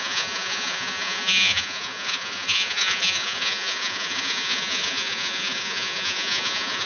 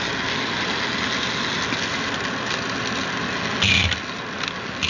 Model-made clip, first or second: first